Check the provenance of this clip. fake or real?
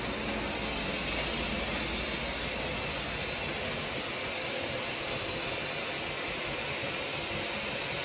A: real